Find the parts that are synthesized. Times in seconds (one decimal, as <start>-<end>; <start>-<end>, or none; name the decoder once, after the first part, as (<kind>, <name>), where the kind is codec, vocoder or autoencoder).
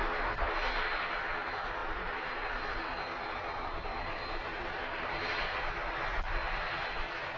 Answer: 1.8-5.9 (vocoder, BigVGAN v2)